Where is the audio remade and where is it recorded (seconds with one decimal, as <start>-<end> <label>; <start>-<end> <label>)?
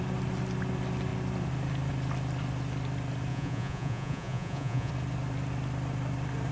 0.0-3.3 recorded; 3.3-4.9 remade; 4.9-6.5 recorded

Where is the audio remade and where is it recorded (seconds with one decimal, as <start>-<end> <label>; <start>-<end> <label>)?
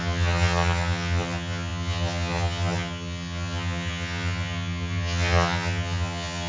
0.0-6.5 remade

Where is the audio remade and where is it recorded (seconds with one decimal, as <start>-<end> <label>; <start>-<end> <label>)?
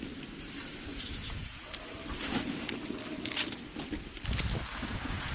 0.0-0.9 recorded; 0.9-1.7 remade; 1.7-4.7 recorded; 4.7-5.3 remade